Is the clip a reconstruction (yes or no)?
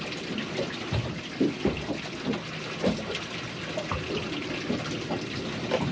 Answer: no